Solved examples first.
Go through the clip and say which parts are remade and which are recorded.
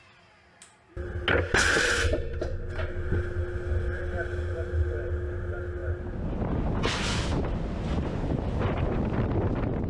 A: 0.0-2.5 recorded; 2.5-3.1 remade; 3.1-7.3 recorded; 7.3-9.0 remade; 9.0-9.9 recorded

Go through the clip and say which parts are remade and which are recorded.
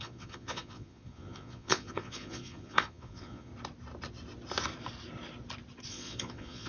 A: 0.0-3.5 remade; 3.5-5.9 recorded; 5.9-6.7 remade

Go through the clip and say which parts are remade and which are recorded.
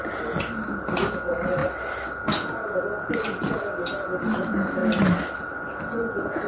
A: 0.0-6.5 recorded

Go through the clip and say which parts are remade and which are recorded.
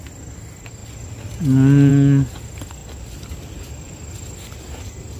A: 0.0-5.2 recorded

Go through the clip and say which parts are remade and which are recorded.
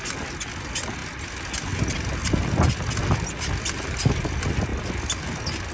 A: 0.0-5.7 recorded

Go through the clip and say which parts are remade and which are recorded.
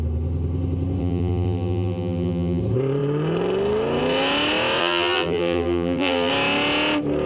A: 0.0-1.0 recorded; 1.0-2.6 remade; 2.6-4.8 recorded; 4.8-6.3 remade; 6.3-7.3 recorded